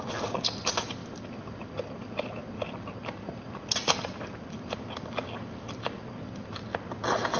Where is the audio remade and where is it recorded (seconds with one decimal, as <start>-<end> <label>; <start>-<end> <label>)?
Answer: 0.0-7.4 recorded